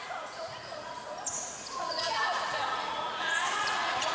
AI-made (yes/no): yes